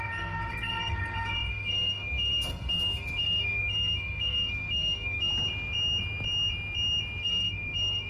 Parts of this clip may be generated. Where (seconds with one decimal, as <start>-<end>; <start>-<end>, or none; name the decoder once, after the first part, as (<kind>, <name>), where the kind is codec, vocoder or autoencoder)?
0.0-5.3 (codec, SNAC); 7.2-8.1